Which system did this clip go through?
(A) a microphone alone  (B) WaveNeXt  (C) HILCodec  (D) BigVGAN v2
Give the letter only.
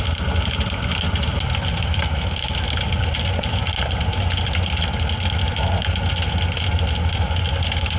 A